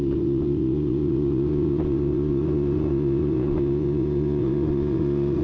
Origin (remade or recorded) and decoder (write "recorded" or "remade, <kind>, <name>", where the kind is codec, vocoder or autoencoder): remade, vocoder, Vocos